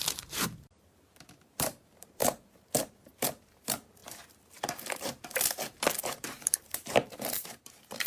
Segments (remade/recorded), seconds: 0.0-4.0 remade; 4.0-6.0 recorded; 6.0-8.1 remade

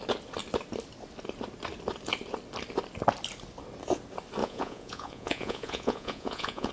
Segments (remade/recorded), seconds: 0.0-4.4 recorded; 4.4-6.7 remade

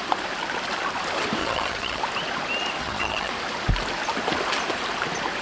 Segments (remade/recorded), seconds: 0.0-1.4 recorded; 1.4-2.0 remade; 2.0-2.8 recorded; 2.8-3.3 remade; 3.3-5.4 recorded

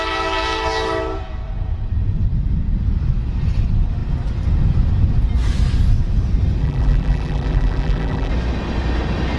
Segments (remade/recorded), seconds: 0.0-6.6 recorded; 6.6-8.3 remade; 8.3-9.4 recorded

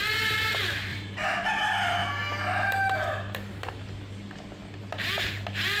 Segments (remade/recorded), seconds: 0.0-0.9 recorded; 0.9-1.5 remade; 1.5-5.8 recorded

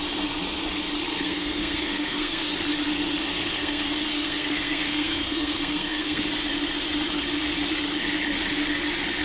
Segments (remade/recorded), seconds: 0.0-1.1 recorded; 1.1-2.5 remade; 2.5-3.3 recorded; 3.3-6.3 remade; 6.3-9.2 recorded

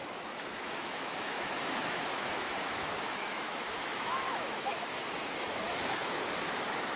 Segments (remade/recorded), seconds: 0.0-7.0 remade

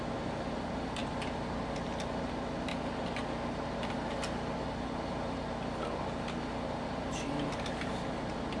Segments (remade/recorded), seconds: 0.0-8.6 recorded